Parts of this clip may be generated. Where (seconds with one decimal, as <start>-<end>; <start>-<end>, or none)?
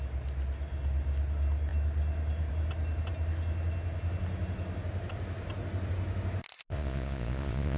6.7-7.8